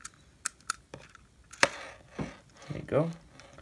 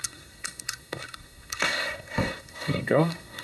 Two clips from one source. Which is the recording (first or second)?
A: first